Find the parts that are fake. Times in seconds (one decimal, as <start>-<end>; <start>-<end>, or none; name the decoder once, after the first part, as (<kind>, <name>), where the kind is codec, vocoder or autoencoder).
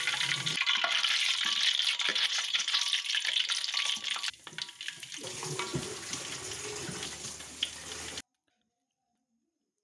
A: 2.1-2.8 (vocoder, Vocos)